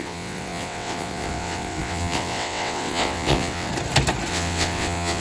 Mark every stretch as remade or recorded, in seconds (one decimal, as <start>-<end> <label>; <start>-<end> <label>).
0.0-3.7 remade; 3.7-4.3 recorded; 4.3-5.2 remade